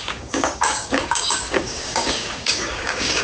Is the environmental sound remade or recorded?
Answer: remade